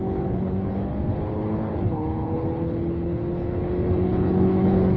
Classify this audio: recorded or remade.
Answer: remade